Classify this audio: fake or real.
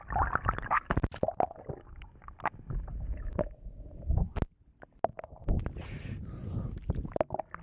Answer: real